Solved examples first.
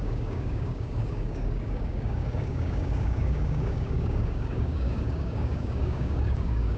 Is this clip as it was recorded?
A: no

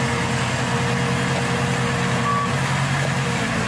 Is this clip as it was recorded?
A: yes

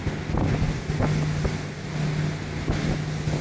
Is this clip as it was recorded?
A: yes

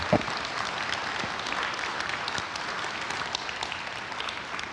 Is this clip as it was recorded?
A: yes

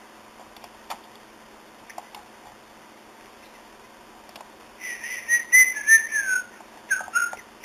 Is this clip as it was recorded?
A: yes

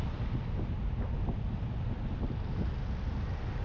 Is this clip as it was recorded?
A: yes